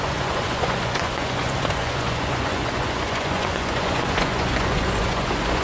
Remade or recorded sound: remade